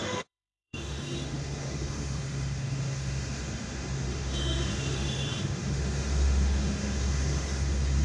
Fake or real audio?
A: fake